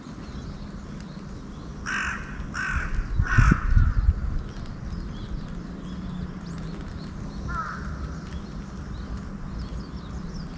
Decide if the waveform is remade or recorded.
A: recorded